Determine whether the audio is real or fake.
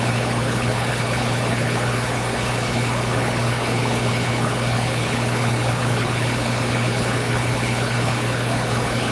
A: fake